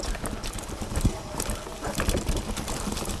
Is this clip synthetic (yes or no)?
no